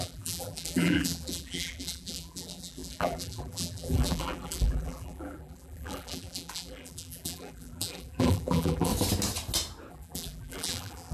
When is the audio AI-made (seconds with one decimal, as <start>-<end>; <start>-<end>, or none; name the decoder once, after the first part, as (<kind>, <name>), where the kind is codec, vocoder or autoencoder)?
0.0-8.9 (vocoder, BigVGAN v2); 9.9-11.1